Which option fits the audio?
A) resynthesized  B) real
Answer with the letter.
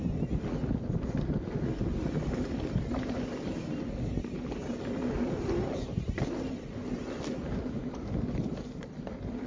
B